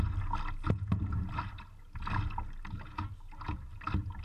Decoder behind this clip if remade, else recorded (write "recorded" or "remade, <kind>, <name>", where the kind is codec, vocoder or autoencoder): recorded